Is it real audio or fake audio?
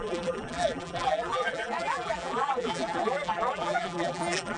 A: fake